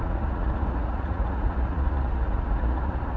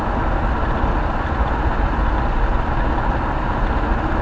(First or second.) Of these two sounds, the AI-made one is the first